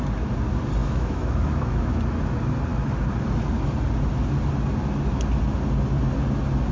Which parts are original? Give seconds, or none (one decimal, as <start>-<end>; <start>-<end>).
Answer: 0.0-0.8; 2.0-6.7